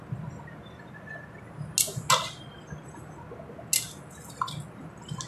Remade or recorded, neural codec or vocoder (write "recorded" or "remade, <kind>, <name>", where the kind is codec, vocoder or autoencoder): recorded